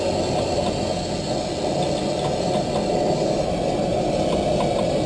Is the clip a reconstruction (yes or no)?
no